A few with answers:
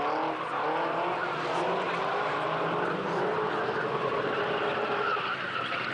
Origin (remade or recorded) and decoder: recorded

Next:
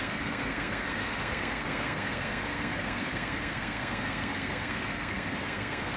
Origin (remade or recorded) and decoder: remade, codec, SNAC